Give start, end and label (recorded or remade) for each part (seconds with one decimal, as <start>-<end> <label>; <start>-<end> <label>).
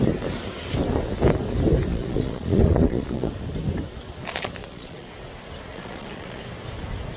0.0-1.9 recorded; 1.9-3.3 remade; 3.3-4.6 recorded; 4.6-5.1 remade; 5.1-5.7 recorded; 5.7-6.4 remade; 6.4-7.2 recorded